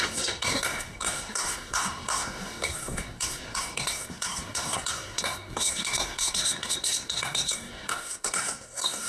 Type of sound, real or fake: fake